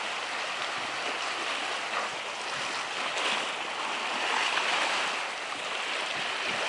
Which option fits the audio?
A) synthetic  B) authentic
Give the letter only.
B